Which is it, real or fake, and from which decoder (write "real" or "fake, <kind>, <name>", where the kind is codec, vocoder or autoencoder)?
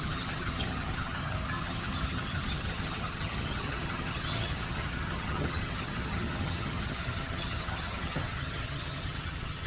fake, vocoder, HiFi-GAN